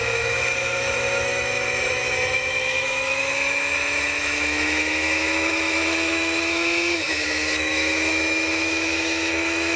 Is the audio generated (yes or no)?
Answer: yes